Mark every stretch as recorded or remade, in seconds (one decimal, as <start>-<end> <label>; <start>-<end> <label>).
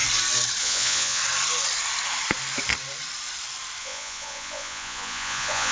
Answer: 0.0-0.6 recorded; 0.6-1.2 remade; 1.2-3.8 recorded; 3.8-5.7 remade